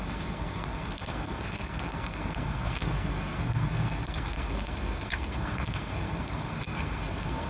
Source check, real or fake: fake